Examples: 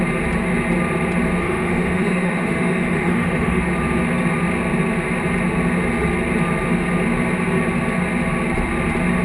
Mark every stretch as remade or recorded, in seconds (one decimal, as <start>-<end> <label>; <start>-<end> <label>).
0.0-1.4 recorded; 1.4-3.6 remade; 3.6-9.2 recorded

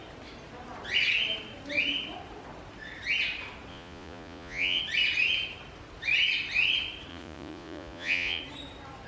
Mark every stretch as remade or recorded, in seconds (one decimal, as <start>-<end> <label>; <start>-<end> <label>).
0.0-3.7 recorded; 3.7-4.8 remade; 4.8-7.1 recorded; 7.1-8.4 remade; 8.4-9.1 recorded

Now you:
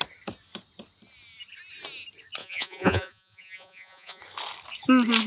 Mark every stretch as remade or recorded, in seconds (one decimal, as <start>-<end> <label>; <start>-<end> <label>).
0.0-2.4 recorded; 2.4-4.2 remade; 4.2-5.3 recorded